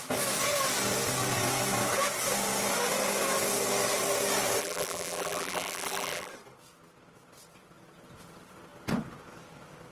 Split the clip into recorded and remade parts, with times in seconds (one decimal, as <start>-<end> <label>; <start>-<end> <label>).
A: 0.0-4.6 recorded; 4.6-6.3 remade; 6.3-9.9 recorded